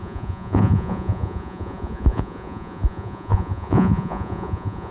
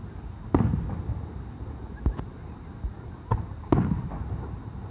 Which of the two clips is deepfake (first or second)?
first